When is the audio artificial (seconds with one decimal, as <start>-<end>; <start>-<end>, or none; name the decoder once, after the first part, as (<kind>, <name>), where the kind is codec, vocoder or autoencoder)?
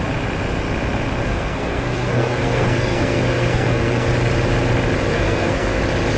1.2-4.1 (codec, SNAC); 5.1-5.8